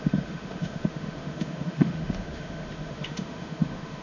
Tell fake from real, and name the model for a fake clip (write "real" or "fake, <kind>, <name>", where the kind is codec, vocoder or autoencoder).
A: fake, autoencoder, DAC-VAE